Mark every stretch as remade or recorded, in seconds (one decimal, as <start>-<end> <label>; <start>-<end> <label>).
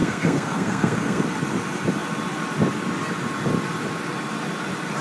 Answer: 0.0-1.2 remade; 1.2-5.0 recorded